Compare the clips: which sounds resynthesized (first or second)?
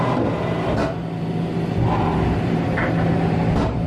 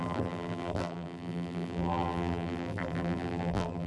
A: second